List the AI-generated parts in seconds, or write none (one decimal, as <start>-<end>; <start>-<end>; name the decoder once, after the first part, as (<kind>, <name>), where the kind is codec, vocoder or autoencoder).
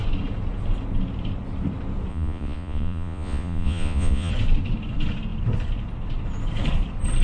2.1-4.3 (vocoder, Vocos)